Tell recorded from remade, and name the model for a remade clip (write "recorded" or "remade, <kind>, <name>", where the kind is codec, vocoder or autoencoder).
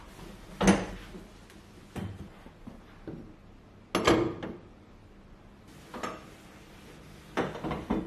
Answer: recorded